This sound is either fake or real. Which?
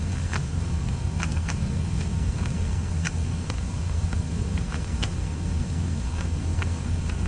fake